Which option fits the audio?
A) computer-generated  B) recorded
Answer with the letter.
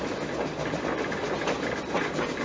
B